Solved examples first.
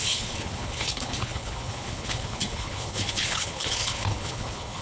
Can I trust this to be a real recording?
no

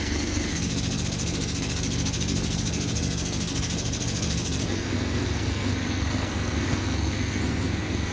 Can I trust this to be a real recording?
no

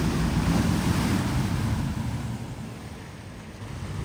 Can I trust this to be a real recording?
yes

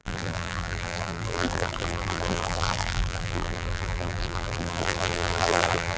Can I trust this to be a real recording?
no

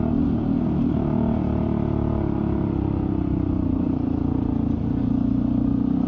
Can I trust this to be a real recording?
yes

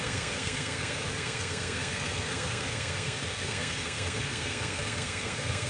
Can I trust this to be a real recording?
no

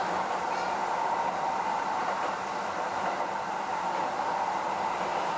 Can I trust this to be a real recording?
yes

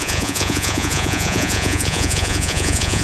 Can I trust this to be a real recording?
no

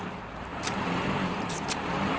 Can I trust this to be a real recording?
yes